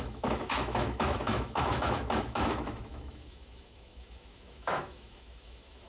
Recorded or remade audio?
remade